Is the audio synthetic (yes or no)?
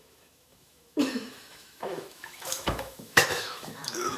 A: yes